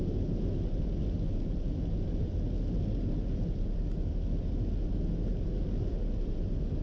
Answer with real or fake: real